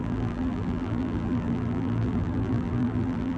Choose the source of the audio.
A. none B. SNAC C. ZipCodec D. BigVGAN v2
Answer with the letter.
D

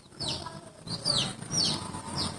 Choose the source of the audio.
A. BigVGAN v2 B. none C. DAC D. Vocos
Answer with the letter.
A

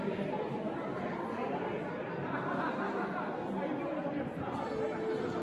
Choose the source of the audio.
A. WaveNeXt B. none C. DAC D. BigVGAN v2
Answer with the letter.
B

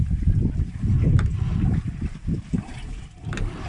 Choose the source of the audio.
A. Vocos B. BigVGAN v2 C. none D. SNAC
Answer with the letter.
C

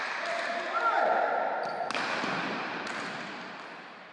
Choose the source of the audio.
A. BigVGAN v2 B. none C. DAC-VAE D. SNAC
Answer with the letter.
B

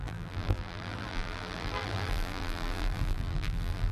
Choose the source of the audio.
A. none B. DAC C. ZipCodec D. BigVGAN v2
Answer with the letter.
D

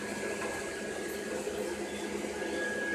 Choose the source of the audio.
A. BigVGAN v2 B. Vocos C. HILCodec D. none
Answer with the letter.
D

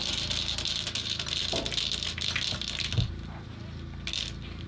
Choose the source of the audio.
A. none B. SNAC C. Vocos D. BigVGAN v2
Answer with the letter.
A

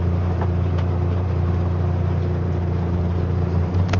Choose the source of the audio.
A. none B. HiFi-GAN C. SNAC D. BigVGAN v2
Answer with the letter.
D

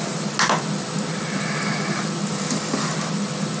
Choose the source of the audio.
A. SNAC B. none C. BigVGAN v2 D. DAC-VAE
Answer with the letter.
B